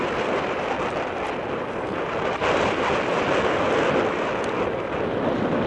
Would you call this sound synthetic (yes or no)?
no